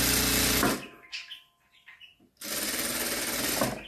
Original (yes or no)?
yes